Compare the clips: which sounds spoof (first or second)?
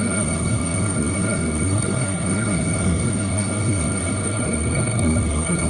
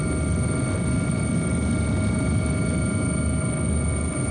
first